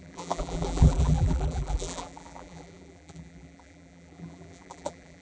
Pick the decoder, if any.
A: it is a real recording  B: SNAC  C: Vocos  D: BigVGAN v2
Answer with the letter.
D